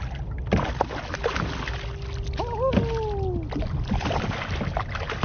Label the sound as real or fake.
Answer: real